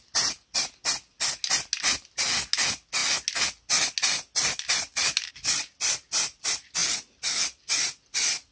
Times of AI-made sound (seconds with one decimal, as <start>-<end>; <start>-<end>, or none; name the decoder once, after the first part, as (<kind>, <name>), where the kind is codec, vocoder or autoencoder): none